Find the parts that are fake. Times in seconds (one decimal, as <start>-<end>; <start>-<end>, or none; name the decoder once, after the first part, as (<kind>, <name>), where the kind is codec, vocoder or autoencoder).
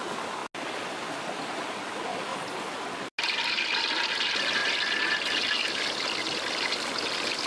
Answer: none